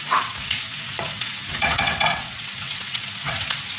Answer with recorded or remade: remade